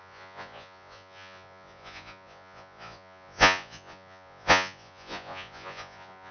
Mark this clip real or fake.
fake